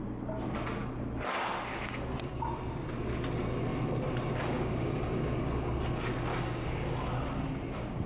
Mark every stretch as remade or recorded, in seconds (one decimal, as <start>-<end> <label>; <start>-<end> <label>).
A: 0.0-4.4 recorded; 4.4-5.4 remade; 5.4-6.3 recorded; 6.3-7.0 remade; 7.0-8.1 recorded

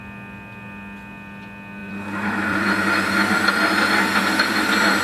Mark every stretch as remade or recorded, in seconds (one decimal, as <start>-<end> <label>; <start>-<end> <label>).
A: 0.0-1.8 recorded; 1.8-3.5 remade; 3.5-5.0 recorded

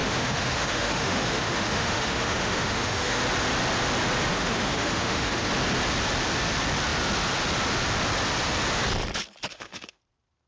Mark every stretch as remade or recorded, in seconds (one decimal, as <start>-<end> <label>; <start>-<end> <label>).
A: 0.0-3.2 remade; 3.2-4.3 recorded; 4.3-5.5 remade; 5.5-9.5 recorded; 9.5-10.0 remade; 10.0-10.5 recorded

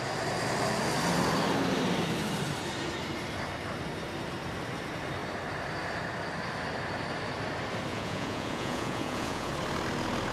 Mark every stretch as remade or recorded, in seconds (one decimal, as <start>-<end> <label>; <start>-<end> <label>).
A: 0.0-7.9 recorded; 7.9-9.5 remade; 9.5-10.3 recorded